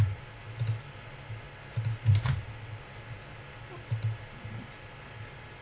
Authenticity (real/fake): real